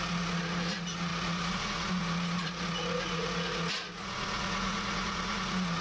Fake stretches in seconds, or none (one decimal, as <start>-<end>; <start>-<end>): 0.0-5.8